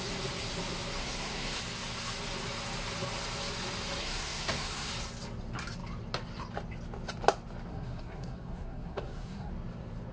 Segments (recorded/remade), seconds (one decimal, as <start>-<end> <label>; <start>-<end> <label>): 0.0-1.0 recorded; 1.0-1.6 remade; 1.6-4.0 recorded; 4.0-4.9 remade; 4.9-7.7 recorded; 7.7-9.5 remade; 9.5-10.1 recorded